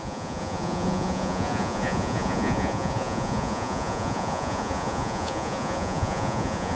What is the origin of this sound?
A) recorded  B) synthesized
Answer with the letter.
B